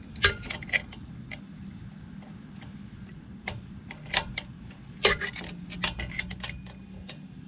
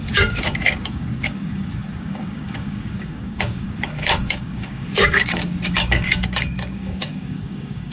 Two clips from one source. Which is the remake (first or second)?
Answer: second